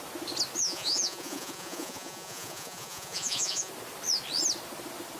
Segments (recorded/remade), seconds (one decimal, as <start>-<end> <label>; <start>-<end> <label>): 0.0-0.6 recorded; 0.6-3.7 remade; 3.7-5.2 recorded